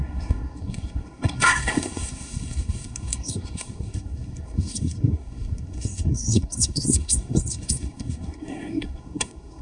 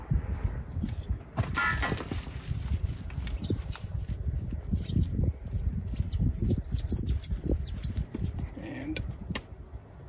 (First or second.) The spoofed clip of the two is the first